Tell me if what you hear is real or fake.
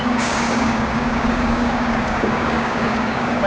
fake